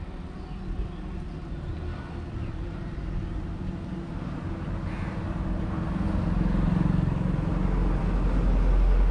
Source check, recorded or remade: recorded